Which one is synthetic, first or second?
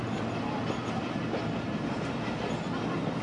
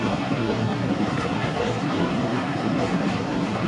second